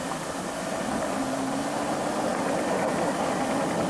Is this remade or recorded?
recorded